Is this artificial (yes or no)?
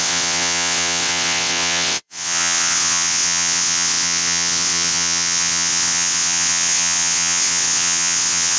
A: yes